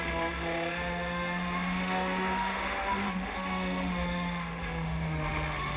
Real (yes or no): no